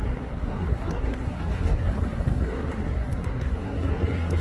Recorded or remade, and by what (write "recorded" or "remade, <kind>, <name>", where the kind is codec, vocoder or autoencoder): remade, codec, SNAC